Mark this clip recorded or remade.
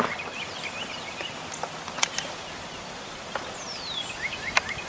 recorded